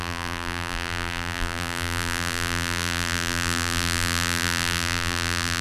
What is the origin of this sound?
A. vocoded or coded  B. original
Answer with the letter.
A